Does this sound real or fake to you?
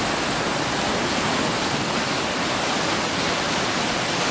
real